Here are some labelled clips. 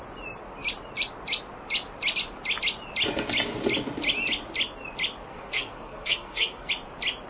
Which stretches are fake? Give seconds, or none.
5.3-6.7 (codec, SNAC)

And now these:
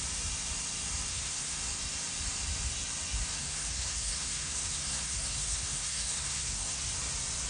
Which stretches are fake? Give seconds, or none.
1.1-1.6 (codec, SNAC); 3.3-6.8